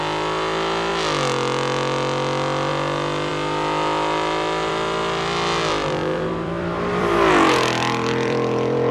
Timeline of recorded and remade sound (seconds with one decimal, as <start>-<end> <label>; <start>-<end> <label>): 0.0-6.1 recorded; 6.1-8.9 remade

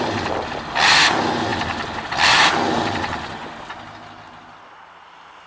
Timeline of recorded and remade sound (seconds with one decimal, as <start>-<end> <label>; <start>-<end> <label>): 0.0-1.5 recorded; 1.5-2.2 remade; 2.2-5.5 recorded

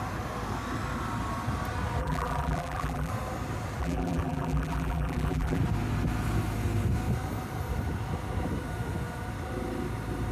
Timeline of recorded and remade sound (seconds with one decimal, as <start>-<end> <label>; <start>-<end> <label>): 0.0-2.0 recorded; 2.0-3.1 remade; 3.1-3.8 recorded; 3.8-5.6 remade; 5.6-10.3 recorded

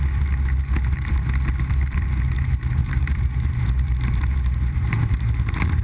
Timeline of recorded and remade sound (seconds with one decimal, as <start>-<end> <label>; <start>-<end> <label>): 0.0-2.8 recorded; 2.8-5.8 remade

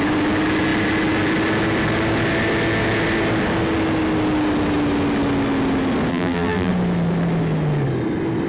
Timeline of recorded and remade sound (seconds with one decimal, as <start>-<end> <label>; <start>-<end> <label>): 0.0-6.1 recorded; 6.1-6.7 remade; 6.7-8.5 recorded